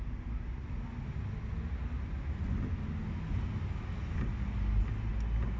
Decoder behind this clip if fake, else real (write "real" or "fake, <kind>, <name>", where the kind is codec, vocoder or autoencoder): real